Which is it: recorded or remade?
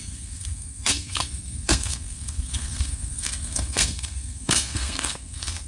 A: remade